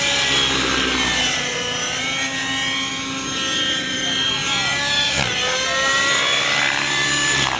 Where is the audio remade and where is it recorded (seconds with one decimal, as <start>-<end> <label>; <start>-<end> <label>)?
0.0-7.6 recorded